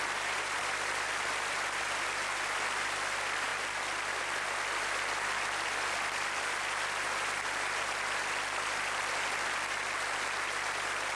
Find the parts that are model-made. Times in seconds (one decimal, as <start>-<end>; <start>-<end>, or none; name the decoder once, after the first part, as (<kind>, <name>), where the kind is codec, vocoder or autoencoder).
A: 3.5-4.2 (vocoder, BigVGAN v2)